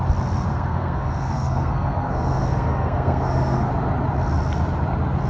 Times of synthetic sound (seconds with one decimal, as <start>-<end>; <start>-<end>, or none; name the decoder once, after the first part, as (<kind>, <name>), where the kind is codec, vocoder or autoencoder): 0.5-3.7 (codec, SNAC)